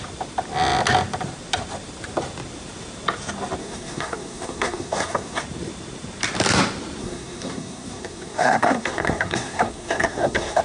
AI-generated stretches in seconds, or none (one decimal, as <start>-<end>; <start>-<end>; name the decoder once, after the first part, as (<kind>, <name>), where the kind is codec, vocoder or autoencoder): 3.6-5.4 (codec, SNAC); 7.0-10.6